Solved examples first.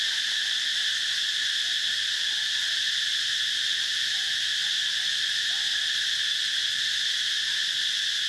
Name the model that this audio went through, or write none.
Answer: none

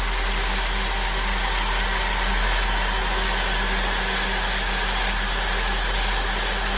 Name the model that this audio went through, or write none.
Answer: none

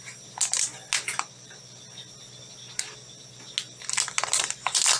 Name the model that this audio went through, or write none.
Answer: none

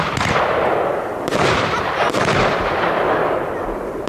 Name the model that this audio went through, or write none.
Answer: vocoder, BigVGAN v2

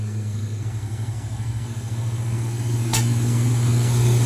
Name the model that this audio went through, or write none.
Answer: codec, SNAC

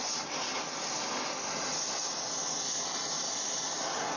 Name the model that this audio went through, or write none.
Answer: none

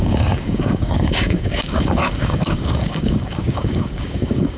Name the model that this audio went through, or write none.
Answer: codec, DAC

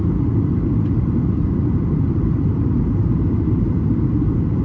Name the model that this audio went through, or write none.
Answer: vocoder, BigVGAN v2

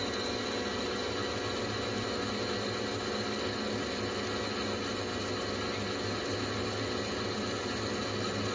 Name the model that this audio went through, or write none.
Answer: none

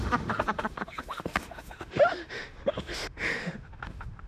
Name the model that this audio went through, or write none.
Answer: autoencoder, DAC-VAE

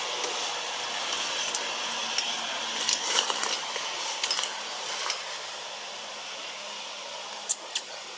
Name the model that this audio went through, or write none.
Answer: none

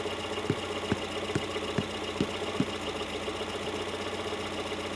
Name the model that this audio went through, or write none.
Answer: none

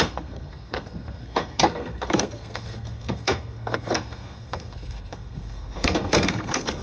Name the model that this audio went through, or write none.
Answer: codec, SNAC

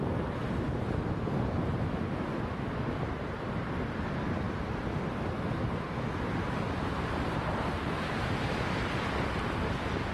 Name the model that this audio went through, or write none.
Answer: none